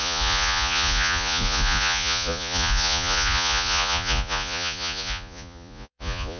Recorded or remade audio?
remade